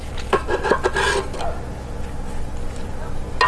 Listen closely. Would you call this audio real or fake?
real